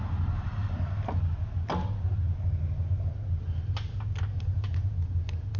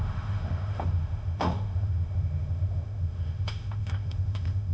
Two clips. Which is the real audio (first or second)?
first